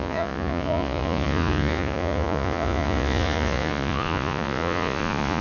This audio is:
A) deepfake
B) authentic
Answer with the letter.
A